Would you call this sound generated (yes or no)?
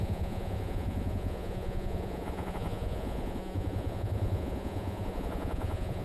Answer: yes